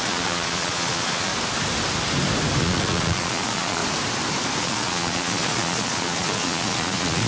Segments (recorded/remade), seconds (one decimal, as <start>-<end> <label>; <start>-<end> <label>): 0.0-1.3 remade; 1.3-2.6 recorded; 2.6-3.8 remade; 3.8-4.6 recorded; 4.6-7.3 remade